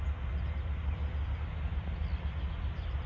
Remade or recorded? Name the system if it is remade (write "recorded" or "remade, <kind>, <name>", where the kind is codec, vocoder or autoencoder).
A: recorded